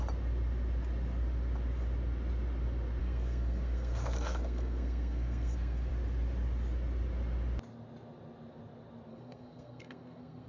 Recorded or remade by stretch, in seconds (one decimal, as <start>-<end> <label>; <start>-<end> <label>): 0.0-3.0 recorded; 3.0-5.9 remade; 5.9-9.1 recorded; 9.1-10.5 remade